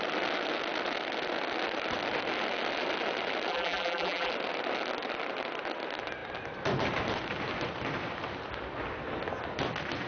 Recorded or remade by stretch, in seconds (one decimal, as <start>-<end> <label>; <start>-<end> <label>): 0.0-3.5 recorded; 3.5-4.3 remade; 4.3-10.1 recorded